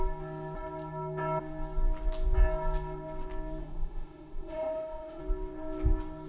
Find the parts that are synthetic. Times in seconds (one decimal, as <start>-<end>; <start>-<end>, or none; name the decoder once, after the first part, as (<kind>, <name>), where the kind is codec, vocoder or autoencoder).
3.6-5.2 (autoencoder, DAC-VAE)